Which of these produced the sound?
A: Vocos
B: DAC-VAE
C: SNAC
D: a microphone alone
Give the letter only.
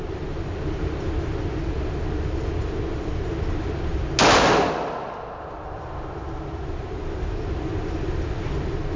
D